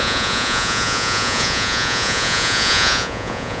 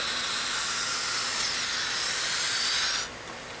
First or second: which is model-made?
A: first